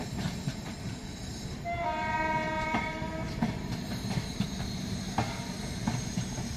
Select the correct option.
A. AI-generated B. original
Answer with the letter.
A